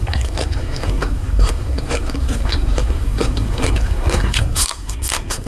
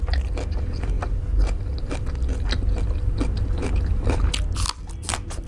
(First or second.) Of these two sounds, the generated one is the first